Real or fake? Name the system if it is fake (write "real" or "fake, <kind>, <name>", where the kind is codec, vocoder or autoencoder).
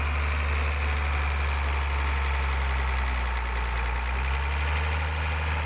real